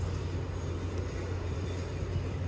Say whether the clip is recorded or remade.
recorded